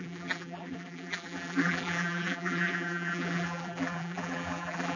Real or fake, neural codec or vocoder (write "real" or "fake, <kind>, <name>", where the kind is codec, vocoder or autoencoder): fake, vocoder, BigVGAN v2